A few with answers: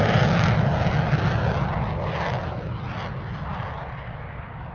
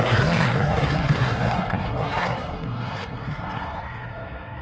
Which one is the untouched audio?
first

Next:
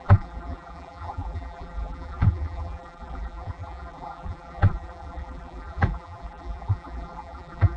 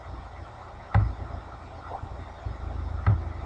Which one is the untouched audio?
second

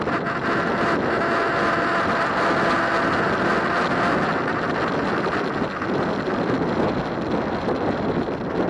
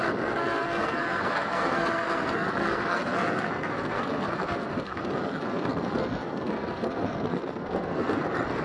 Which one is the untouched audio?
first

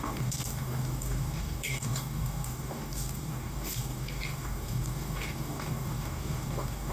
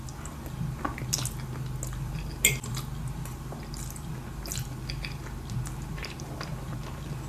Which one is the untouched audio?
second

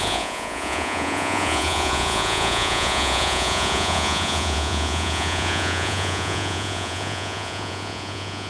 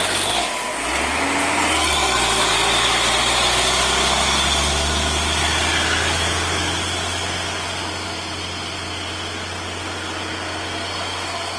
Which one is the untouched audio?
second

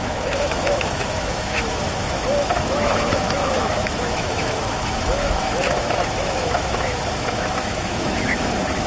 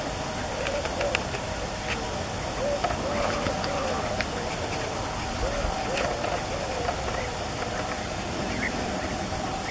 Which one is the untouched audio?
second